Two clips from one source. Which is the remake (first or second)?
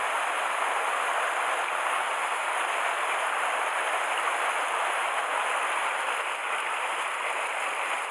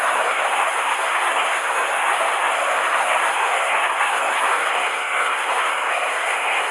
second